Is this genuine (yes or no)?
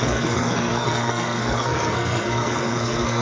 no